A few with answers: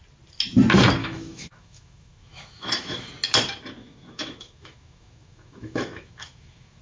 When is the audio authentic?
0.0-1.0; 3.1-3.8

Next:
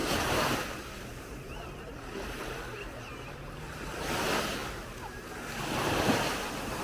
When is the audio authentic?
4.1-6.8

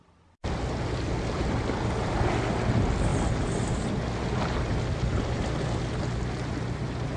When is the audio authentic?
0.0-7.2

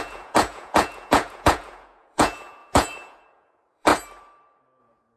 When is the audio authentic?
3.9-4.8

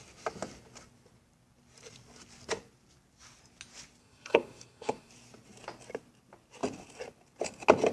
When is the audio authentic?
0.0-4.0; 5.1-7.9

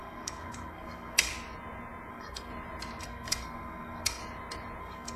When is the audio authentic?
1.3-2.1; 2.5-3.0; 4.2-4.8

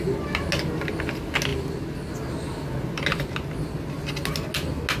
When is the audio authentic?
0.0-5.0

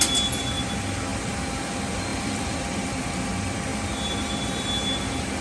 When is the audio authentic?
0.0-1.1; 1.6-2.1; 3.0-5.4